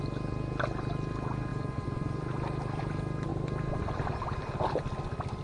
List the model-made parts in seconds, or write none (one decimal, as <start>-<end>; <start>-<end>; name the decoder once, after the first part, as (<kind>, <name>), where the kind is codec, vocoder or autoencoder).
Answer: 1.5-2.8 (vocoder, BigVGAN v2); 3.3-3.8